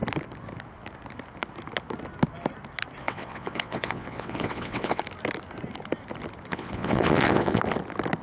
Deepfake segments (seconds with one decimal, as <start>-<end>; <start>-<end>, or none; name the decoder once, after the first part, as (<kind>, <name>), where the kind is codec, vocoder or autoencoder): 3.0-5.0 (vocoder, WaveNeXt); 6.5-7.6